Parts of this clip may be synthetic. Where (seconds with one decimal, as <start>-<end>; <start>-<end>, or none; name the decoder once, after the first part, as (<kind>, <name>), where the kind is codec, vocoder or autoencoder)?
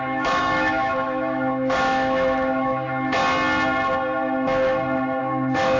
0.0-3.2 (autoencoder, DAC-VAE); 5.2-5.8